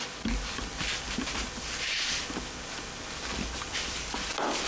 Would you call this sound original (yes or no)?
yes